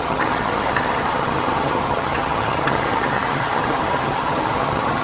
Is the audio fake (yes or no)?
yes